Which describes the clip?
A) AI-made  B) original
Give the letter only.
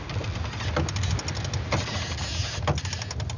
B